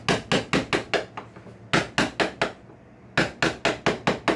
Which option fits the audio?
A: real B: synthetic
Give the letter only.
A